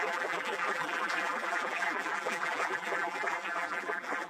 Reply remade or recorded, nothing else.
remade